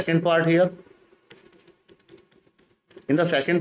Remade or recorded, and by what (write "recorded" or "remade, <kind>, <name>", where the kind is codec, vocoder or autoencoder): recorded